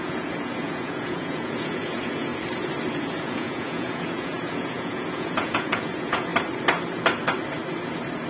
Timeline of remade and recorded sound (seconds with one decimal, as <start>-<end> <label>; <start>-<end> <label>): 0.0-2.3 remade; 2.3-2.9 recorded; 2.9-6.3 remade; 6.3-8.3 recorded